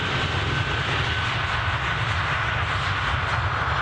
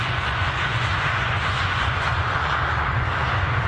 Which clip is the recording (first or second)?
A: first